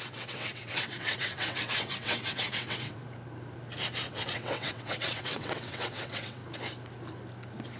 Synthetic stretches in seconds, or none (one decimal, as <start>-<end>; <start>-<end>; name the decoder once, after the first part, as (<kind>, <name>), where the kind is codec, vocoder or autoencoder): 0.0-3.0 (vocoder, WaveNeXt); 4.1-6.4